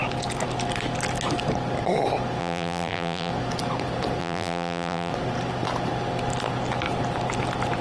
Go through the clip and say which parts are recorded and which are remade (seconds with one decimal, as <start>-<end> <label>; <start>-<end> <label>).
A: 0.0-2.4 recorded; 2.4-3.3 remade; 3.3-4.2 recorded; 4.2-5.1 remade; 5.1-7.8 recorded